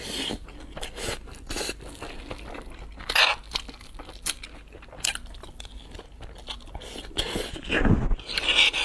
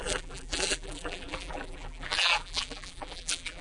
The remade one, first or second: second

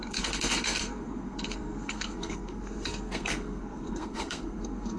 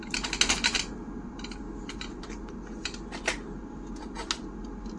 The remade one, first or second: first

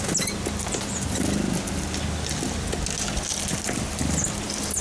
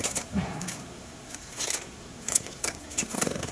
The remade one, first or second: second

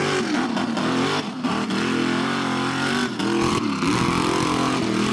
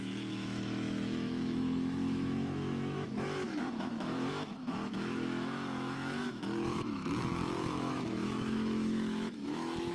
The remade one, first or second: second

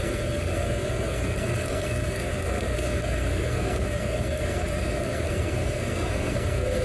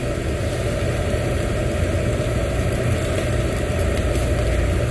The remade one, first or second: first